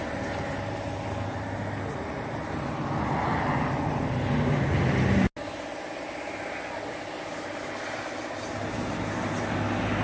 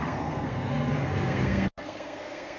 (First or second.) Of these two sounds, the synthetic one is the second